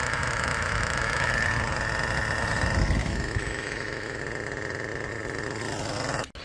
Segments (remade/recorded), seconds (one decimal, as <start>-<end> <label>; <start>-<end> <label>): 0.0-1.3 remade; 1.3-3.0 recorded; 3.0-4.2 remade; 4.2-6.4 recorded